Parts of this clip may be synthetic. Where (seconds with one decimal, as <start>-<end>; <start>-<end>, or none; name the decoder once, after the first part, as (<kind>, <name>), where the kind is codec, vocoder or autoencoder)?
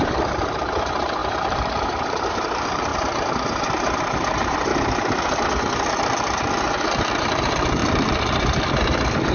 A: 0.0-2.9 (vocoder, BigVGAN v2); 3.6-4.7; 7.2-7.8; 8.8-9.3